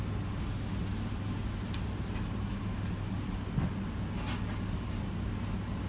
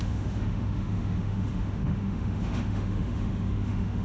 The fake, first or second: second